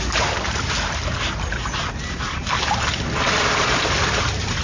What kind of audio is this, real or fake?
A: real